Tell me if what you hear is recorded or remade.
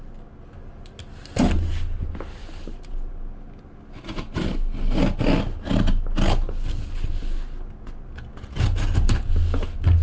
recorded